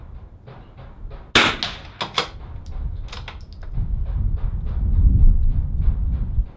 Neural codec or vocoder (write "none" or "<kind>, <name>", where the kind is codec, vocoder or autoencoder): none